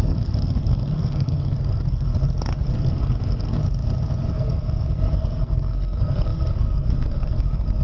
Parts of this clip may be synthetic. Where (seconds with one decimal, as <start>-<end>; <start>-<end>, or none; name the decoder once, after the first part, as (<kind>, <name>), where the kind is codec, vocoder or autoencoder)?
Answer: 0.0-2.1 (codec, SNAC); 2.6-3.6; 4.3-7.8

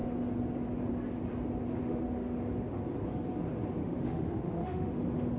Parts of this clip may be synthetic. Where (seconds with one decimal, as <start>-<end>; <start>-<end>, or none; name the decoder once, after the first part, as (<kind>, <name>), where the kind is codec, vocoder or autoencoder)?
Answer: 1.8-2.4 (autoencoder, DAC-VAE); 3.8-4.9

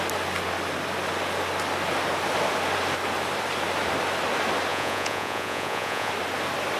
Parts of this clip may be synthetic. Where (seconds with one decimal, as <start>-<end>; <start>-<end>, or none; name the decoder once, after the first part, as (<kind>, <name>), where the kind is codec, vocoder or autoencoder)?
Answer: 4.7-6.1 (vocoder, Vocos)

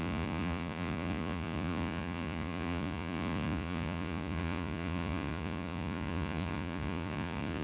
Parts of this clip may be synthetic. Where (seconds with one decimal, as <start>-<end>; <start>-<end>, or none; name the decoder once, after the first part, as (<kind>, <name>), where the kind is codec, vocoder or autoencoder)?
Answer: 0.0-7.6 (vocoder, Vocos)

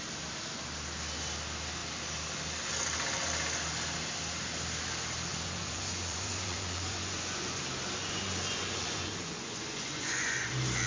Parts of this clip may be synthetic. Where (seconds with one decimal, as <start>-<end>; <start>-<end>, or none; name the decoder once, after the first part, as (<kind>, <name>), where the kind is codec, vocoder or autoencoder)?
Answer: 5.3-7.6 (vocoder, Vocos); 8.0-10.5

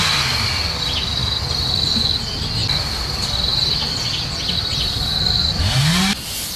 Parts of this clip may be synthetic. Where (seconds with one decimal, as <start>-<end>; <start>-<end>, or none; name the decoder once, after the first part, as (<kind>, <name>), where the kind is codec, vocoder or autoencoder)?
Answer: none

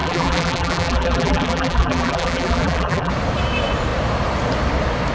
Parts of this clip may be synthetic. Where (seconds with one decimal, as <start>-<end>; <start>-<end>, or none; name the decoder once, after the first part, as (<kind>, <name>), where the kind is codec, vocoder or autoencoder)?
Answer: 0.0-3.1 (vocoder, BigVGAN v2)